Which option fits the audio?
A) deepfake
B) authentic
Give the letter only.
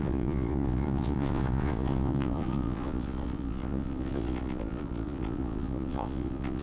A